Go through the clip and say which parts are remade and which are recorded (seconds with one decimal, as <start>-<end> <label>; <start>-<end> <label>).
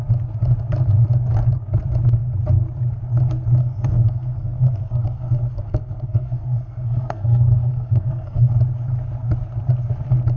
0.0-3.6 recorded; 3.6-8.5 remade; 8.5-10.4 recorded